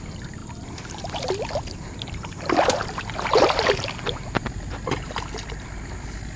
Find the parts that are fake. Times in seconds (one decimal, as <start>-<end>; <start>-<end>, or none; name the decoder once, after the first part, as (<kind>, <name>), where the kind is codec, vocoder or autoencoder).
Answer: none